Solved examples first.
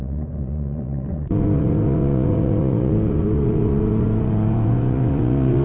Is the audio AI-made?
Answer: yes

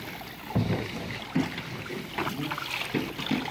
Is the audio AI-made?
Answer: no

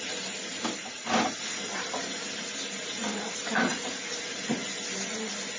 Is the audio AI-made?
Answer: no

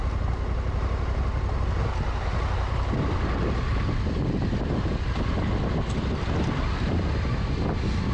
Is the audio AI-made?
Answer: no